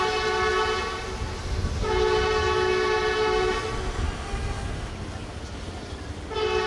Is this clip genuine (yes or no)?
yes